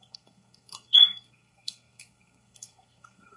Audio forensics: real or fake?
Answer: fake